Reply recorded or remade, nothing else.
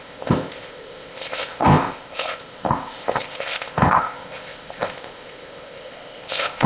remade